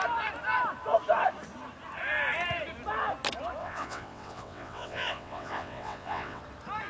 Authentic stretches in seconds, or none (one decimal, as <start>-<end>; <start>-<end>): 0.0-3.6; 6.4-6.9